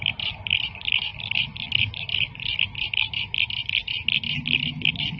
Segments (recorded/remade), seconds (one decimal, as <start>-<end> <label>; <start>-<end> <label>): 0.0-5.2 recorded